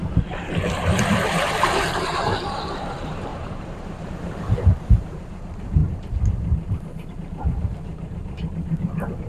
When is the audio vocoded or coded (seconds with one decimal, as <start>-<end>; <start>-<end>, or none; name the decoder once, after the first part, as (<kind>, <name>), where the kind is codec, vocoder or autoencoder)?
0.0-5.8 (vocoder, BigVGAN v2); 7.1-9.3